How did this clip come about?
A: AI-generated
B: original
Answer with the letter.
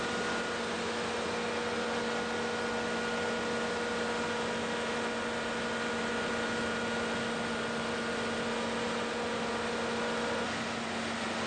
B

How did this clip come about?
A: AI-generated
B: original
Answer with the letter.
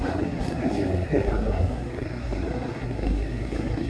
A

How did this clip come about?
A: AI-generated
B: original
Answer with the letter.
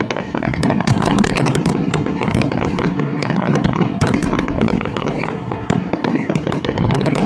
A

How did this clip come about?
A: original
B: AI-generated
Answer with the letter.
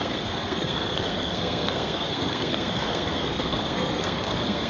B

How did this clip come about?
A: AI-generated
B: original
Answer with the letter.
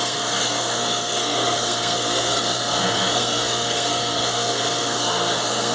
A